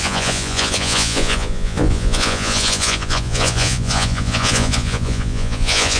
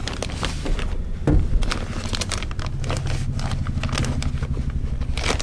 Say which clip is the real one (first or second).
second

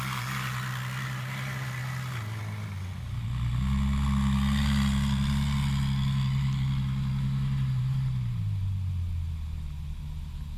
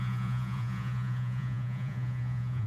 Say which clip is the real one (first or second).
first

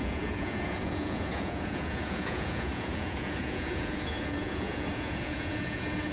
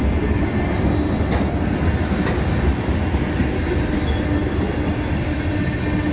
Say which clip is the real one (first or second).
second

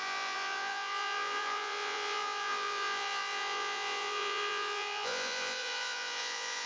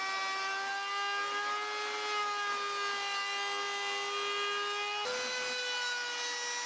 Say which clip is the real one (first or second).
second